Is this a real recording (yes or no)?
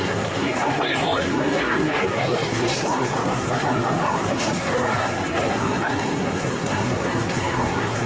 no